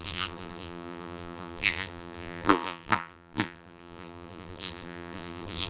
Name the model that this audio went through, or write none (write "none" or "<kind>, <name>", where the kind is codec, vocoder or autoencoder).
vocoder, BigVGAN v2